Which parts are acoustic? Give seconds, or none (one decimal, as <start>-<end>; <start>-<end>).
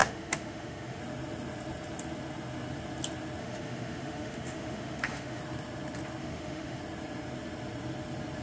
1.0-3.4; 5.4-6.2; 6.8-8.4